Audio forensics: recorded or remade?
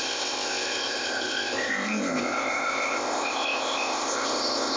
remade